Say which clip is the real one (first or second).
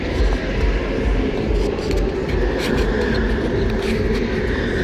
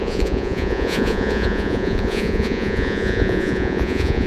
first